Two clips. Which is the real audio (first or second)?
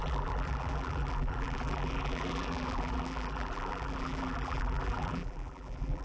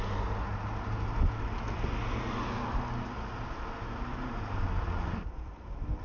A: second